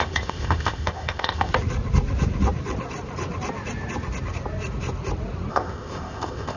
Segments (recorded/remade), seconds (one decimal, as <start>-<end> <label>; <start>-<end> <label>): 0.0-1.5 remade; 1.5-5.5 recorded; 5.5-6.6 remade